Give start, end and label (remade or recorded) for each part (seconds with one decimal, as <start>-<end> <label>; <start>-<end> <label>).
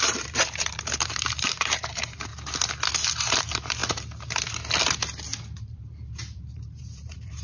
0.0-2.3 remade; 2.3-3.4 recorded; 3.4-3.8 remade; 3.8-5.6 recorded; 5.6-7.4 remade